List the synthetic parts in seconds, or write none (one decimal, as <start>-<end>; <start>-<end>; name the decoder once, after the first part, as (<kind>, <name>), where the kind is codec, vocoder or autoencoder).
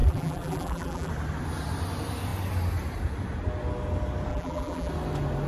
0.0-1.1 (vocoder, BigVGAN v2); 4.3-4.9